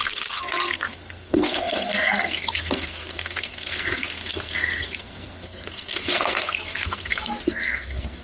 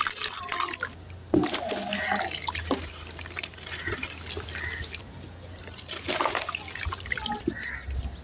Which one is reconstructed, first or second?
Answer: first